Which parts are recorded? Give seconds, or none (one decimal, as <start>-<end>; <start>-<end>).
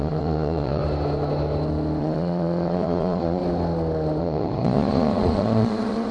0.8-2.0; 3.4-4.2